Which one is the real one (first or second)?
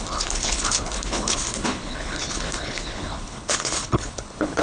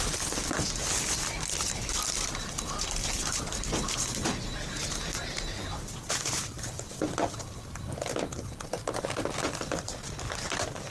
second